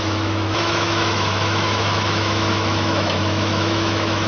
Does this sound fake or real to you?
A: fake